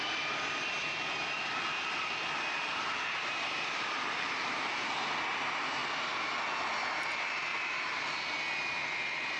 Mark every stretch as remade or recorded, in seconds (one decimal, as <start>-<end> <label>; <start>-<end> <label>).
0.0-0.8 recorded; 0.8-4.9 remade; 4.9-7.5 recorded; 7.5-8.2 remade; 8.2-9.4 recorded